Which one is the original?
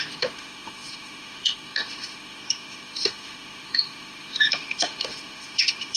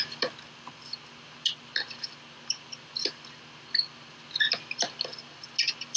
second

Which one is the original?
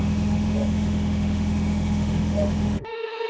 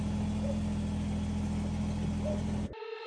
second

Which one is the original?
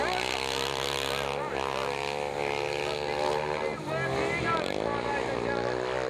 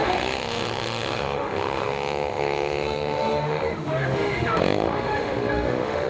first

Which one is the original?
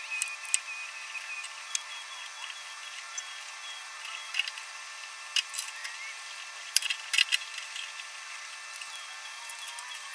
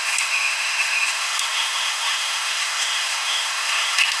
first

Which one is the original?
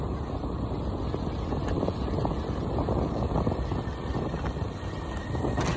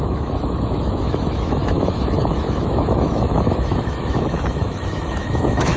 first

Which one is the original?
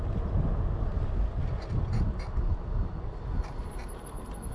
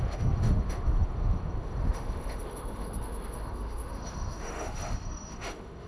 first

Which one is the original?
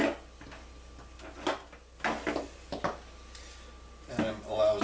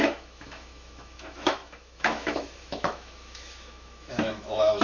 first